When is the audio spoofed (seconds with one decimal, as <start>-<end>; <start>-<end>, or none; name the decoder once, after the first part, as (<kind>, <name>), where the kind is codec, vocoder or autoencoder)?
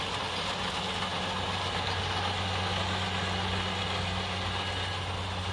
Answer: none